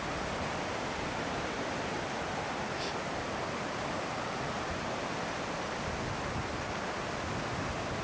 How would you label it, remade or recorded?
recorded